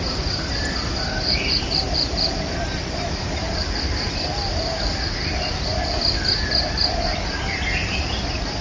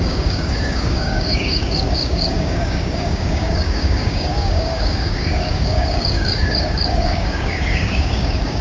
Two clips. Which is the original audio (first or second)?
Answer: first